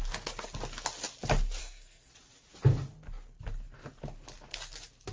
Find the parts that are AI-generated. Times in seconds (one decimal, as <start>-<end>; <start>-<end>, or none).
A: 1.6-2.1